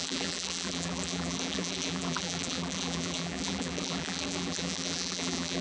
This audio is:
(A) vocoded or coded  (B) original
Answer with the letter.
A